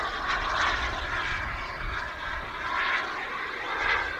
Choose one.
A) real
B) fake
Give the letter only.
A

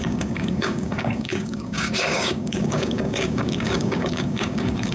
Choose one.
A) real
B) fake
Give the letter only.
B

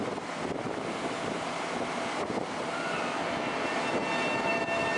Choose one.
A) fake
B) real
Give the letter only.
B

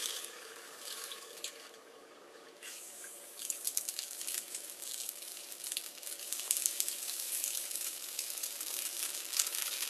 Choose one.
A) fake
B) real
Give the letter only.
A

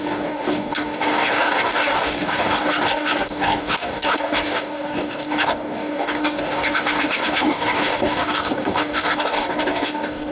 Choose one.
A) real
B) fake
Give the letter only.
B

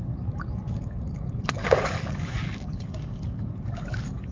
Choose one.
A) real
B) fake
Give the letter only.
B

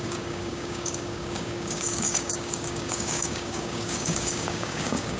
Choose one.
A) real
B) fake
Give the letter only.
B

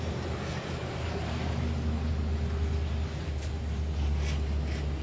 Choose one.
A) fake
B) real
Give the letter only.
B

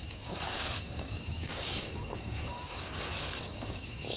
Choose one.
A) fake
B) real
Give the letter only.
A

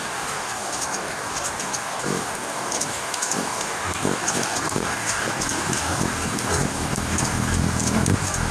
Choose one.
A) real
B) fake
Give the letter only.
B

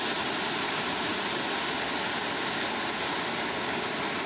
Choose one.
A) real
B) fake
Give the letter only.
A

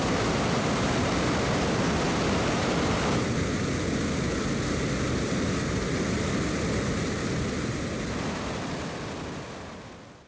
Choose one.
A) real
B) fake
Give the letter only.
A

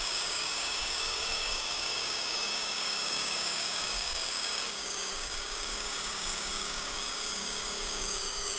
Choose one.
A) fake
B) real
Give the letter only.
A